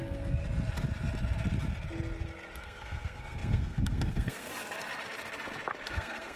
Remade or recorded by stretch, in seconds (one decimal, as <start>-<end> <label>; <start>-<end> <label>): 0.0-0.4 remade; 0.4-2.6 recorded; 2.6-4.5 remade; 4.5-5.9 recorded; 5.9-6.4 remade